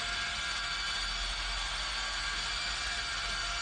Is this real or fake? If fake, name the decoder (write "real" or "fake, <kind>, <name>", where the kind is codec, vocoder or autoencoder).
real